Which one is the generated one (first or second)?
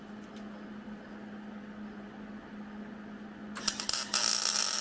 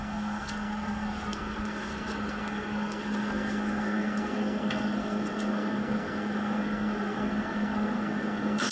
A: second